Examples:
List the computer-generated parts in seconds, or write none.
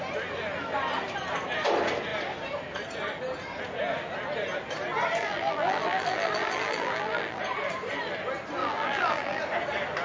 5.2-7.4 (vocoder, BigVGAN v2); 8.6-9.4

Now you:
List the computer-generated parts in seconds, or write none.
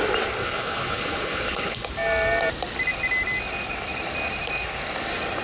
0.4-1.9 (codec, HILCodec)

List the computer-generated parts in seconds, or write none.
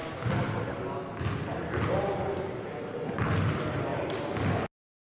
none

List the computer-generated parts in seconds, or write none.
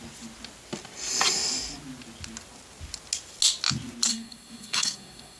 4.1-5.4 (codec, SNAC)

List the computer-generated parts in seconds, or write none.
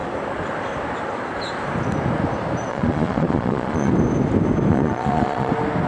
2.7-3.9 (vocoder, Vocos); 4.7-5.5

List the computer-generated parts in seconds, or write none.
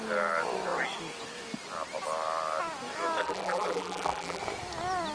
3.2-4.4 (vocoder, BigVGAN v2)